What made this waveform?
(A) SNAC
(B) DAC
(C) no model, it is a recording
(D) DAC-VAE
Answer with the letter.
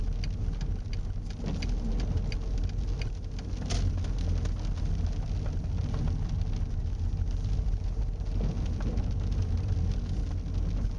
C